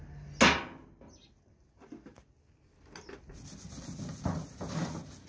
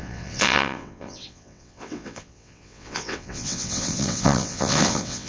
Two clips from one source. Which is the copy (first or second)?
second